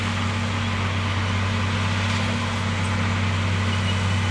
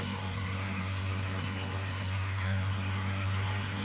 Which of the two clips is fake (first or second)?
second